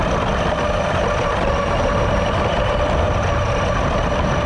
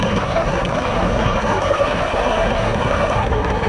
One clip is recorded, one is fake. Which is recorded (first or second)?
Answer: first